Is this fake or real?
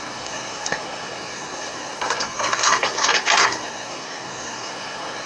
fake